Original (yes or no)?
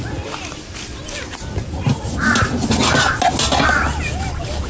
yes